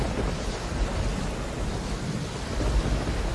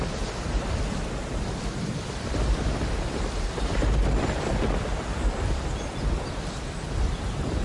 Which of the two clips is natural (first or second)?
first